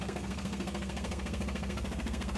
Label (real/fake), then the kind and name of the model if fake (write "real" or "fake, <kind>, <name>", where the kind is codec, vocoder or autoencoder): fake, codec, SNAC